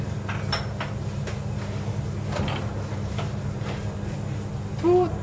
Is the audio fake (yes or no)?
no